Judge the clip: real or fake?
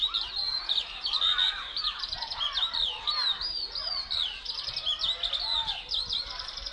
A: real